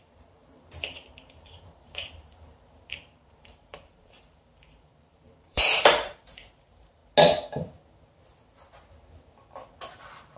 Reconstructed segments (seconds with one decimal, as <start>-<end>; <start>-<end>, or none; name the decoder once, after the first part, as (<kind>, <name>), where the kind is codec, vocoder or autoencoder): 0.0-7.0 (vocoder, BigVGAN v2); 10.0-10.4

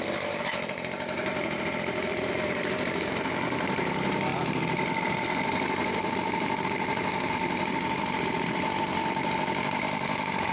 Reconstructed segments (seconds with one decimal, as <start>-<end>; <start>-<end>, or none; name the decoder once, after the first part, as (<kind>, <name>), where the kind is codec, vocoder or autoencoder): 0.0-4.3 (vocoder, BigVGAN v2); 5.0-10.5

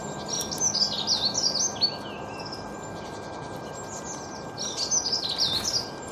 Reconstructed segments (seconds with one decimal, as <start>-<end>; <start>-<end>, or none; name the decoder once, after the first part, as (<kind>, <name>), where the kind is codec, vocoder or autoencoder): none